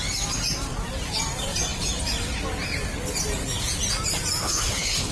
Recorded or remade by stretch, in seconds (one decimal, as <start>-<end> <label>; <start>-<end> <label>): 0.0-4.4 recorded; 4.4-5.1 remade